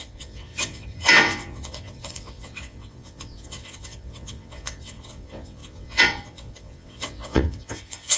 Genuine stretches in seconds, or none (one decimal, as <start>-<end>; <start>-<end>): none